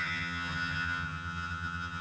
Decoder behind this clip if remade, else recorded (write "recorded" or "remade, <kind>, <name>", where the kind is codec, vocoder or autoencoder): remade, vocoder, HiFi-GAN